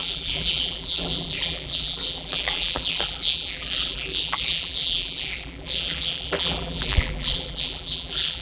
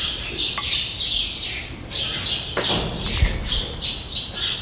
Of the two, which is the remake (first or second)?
first